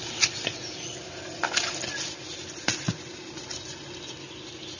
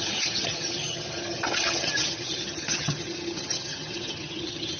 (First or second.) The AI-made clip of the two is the second